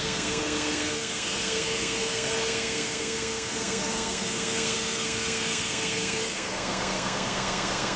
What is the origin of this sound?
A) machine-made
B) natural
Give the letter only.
A